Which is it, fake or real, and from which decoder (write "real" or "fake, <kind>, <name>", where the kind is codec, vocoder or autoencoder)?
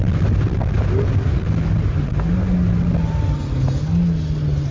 real